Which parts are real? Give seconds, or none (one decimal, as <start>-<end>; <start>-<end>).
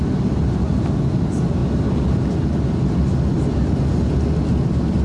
0.0-5.0